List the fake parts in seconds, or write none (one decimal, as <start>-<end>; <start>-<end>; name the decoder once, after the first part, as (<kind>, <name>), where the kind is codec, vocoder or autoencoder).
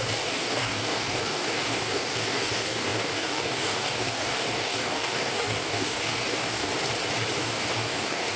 0.0-6.7 (codec, DAC); 7.4-8.4